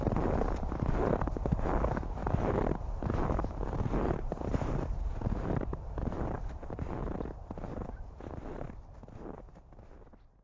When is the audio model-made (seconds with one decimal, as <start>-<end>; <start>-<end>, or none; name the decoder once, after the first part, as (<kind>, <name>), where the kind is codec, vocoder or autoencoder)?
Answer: none

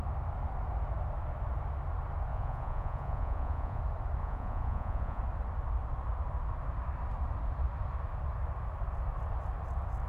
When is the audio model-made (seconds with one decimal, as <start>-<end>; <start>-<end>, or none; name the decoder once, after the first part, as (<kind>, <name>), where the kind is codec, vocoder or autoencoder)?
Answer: 2.3-3.8 (vocoder, Vocos); 4.2-5.2

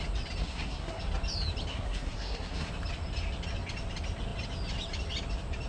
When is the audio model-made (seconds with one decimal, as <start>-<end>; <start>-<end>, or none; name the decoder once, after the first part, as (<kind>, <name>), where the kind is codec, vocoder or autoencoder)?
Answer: 0.4-1.0 (codec, SNAC); 1.7-2.7

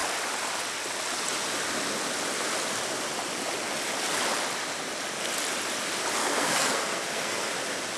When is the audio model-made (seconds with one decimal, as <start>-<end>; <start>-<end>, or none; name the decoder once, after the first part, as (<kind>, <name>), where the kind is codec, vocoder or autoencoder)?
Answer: 6.2-7.5 (codec, SNAC)